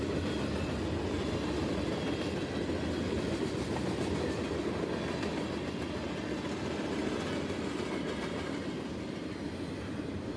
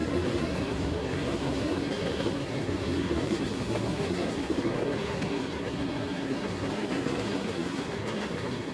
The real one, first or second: first